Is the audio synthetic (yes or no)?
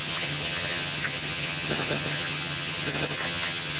yes